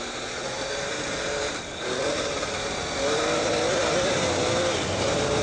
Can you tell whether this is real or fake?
real